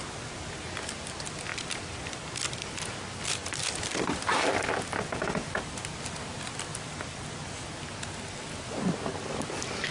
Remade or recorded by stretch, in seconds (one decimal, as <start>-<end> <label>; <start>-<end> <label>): 0.0-1.5 recorded; 1.5-6.0 remade; 6.0-6.7 recorded; 6.7-7.3 remade; 7.3-9.9 recorded